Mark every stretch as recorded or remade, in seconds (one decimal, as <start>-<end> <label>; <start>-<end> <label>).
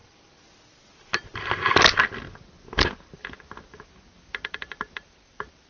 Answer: 0.0-5.7 recorded